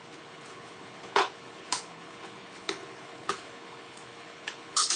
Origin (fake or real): fake